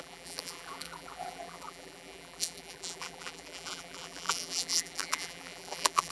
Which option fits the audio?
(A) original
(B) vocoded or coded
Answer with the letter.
B